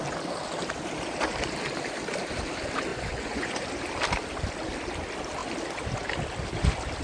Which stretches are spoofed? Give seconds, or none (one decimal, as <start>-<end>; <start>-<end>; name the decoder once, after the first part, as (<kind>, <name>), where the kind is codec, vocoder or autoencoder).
2.9-3.6 (vocoder, Vocos)